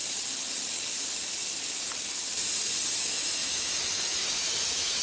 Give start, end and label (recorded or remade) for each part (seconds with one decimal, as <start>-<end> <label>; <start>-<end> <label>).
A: 0.0-3.0 recorded; 3.0-5.0 remade